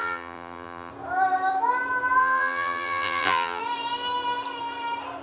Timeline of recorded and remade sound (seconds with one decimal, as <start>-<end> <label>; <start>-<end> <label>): 0.0-0.9 remade; 0.9-2.2 recorded; 2.2-3.6 remade; 3.6-5.2 recorded